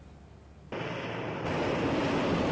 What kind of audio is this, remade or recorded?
recorded